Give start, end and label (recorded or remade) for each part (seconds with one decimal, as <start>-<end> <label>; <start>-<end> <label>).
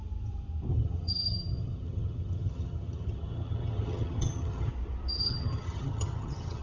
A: 0.0-0.7 recorded; 0.7-4.7 remade; 4.7-5.2 recorded; 5.2-6.6 remade